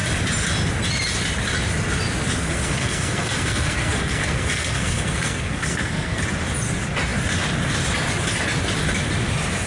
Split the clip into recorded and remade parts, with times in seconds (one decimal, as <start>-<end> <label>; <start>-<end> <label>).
0.0-2.4 recorded; 2.4-6.2 remade; 6.2-9.7 recorded